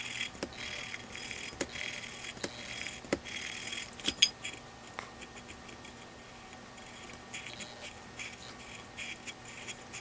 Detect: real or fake real